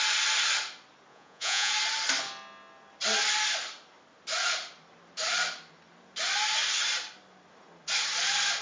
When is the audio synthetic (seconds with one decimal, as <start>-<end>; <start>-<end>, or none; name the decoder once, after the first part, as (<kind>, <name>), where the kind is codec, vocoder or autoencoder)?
1.1-1.7 (vocoder, Vocos)